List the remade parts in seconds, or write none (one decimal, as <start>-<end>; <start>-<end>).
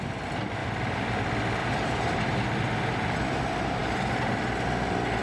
0.6-1.2; 1.6-2.4